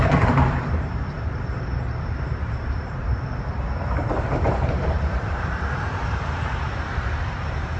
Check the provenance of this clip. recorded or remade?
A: remade